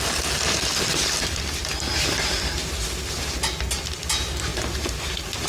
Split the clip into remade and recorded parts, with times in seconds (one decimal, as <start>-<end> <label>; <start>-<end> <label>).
0.0-5.5 recorded